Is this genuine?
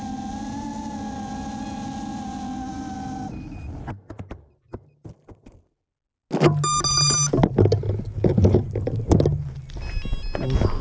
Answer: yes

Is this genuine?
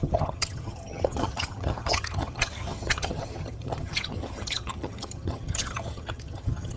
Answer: no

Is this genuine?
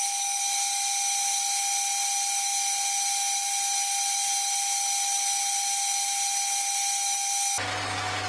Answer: yes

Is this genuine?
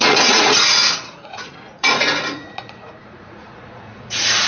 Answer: no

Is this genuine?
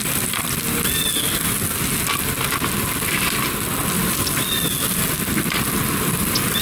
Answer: yes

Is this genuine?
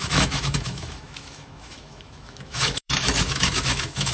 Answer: no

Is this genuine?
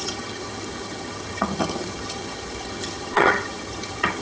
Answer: no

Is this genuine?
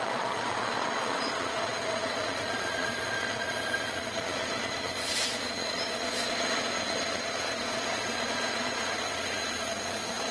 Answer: no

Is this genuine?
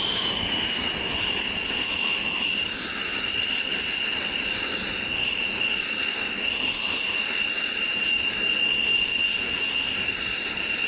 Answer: yes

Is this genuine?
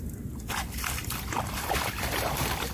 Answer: no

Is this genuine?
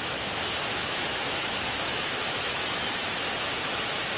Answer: no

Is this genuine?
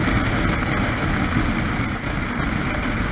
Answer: yes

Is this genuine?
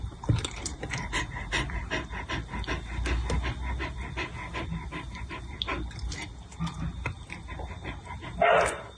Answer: yes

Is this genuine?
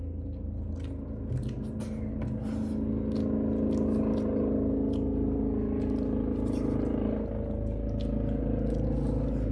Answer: yes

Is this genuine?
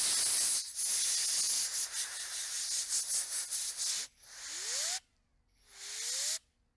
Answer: yes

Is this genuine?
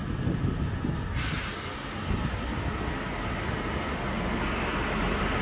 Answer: yes